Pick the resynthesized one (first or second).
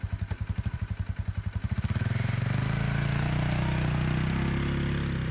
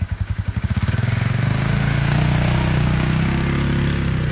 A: second